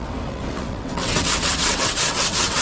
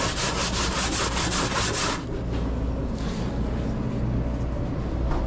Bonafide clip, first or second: second